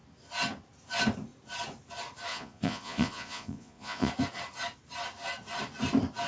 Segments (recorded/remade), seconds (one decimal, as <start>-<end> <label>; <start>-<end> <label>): 0.0-2.3 recorded; 2.3-4.1 remade; 4.1-6.3 recorded